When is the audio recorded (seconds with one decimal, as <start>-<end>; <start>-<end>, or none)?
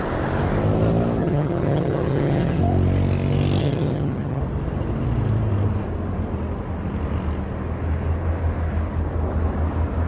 0.0-1.2; 2.6-3.6; 4.4-10.1